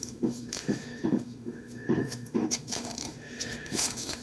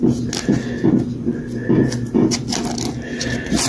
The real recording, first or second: second